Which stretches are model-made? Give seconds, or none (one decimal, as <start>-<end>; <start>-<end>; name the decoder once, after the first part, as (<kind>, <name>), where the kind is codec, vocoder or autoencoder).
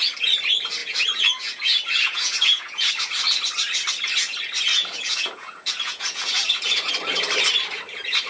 0.8-2.9 (vocoder, Vocos); 4.7-6.9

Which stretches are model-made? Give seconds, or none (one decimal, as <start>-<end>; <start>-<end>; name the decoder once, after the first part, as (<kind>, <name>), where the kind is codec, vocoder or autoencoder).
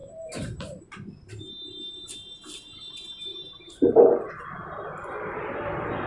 0.0-0.8 (vocoder, BigVGAN v2); 3.3-4.3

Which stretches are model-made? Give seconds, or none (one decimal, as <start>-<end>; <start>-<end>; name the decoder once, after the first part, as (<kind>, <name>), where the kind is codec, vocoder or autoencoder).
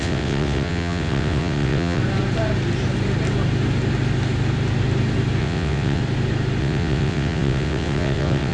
0.0-2.0 (vocoder, WaveNeXt); 5.4-6.0; 6.6-8.5